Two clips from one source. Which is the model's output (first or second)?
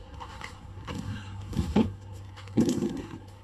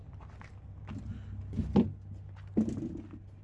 first